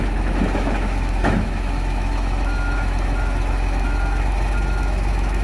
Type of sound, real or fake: fake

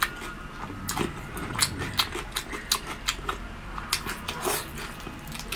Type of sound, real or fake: real